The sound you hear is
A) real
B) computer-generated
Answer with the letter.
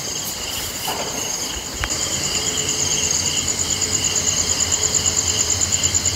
B